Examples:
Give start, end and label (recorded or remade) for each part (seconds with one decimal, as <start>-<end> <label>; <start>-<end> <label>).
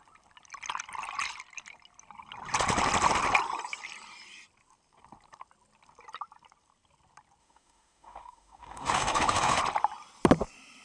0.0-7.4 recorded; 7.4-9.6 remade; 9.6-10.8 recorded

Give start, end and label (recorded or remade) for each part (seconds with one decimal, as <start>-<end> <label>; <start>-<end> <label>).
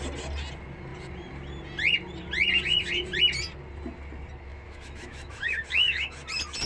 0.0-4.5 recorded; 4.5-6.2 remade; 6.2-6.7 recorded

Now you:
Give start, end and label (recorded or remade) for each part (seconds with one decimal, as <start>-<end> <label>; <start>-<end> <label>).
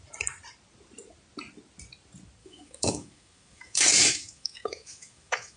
0.0-2.4 recorded; 2.4-5.6 remade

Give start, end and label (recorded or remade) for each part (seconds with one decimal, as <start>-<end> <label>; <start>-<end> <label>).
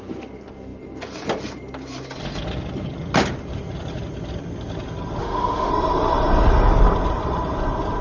0.0-5.2 recorded; 5.2-5.7 remade; 5.7-8.0 recorded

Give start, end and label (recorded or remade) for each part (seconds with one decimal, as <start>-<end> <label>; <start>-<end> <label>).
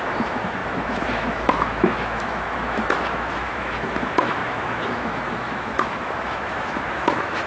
0.0-7.5 remade